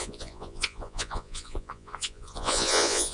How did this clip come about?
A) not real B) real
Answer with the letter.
A